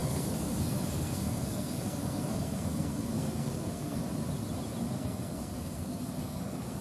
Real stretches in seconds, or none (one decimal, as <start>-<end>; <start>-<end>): 4.0-4.9

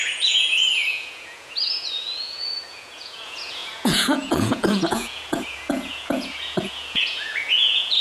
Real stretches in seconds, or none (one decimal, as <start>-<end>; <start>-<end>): none

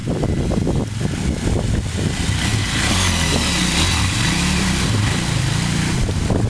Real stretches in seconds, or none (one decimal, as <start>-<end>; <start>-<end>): 0.0-6.5

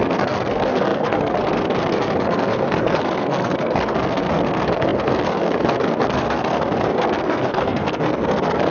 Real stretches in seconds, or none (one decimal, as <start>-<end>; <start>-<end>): none

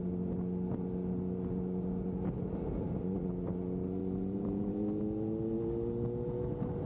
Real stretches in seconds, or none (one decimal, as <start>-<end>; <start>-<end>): 0.0-4.0; 5.0-6.9

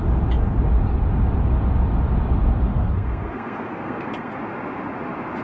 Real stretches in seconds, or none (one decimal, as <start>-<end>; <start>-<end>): 0.0-2.7; 4.4-5.4

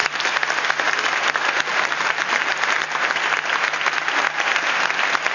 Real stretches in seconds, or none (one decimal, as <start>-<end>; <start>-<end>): 0.0-1.7; 3.2-5.3